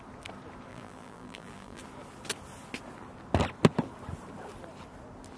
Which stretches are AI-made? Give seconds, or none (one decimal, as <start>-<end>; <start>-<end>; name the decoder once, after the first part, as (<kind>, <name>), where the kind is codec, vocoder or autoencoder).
0.7-1.8 (vocoder, BigVGAN v2)